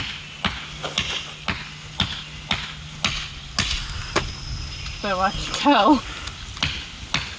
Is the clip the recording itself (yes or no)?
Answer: yes